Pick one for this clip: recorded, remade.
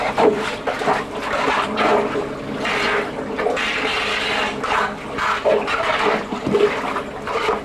recorded